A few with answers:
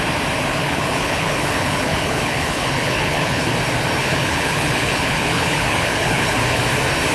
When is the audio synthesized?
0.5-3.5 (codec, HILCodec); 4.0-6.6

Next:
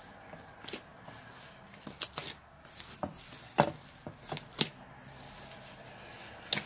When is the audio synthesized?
none

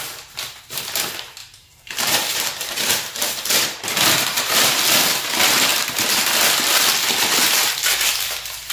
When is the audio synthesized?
1.4-3.8 (vocoder, BigVGAN v2); 4.3-4.8

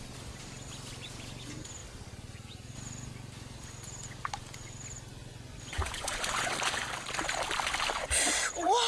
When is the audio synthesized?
5.2-6.5 (vocoder, Vocos)